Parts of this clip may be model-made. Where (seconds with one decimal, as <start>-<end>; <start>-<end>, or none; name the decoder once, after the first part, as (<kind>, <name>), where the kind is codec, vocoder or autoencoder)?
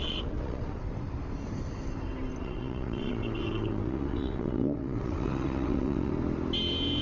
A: 0.0-0.8 (vocoder, WaveNeXt); 2.3-6.1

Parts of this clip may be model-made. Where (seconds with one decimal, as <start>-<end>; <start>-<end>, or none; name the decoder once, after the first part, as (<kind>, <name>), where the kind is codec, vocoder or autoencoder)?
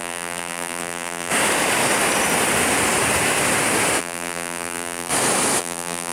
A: 0.0-1.3 (vocoder, BigVGAN v2); 4.0-5.1; 5.6-6.1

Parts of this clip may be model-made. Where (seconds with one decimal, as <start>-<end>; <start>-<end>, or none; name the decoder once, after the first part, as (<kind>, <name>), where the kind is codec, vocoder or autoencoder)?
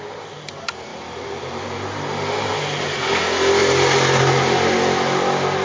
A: 0.9-2.5 (vocoder, BigVGAN v2)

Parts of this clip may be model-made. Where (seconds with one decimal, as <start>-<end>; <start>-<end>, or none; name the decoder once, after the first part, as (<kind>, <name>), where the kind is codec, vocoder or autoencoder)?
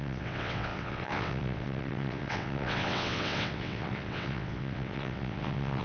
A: 0.0-5.8 (vocoder, WaveNeXt)